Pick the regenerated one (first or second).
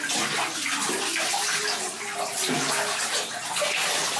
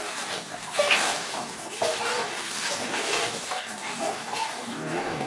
second